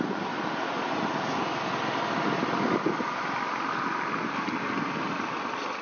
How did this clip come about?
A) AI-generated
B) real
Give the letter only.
B